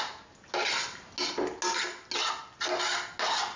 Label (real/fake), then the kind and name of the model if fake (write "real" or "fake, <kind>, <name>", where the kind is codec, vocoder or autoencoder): real